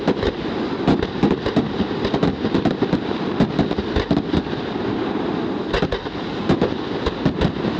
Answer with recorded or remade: recorded